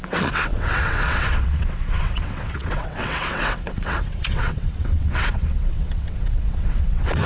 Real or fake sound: fake